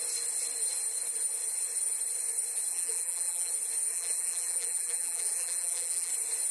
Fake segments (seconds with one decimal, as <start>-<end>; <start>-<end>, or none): 2.7-3.5; 3.9-6.1